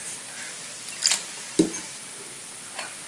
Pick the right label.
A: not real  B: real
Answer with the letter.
B